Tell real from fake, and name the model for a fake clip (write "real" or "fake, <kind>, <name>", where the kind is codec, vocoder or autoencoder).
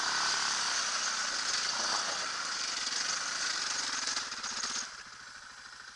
real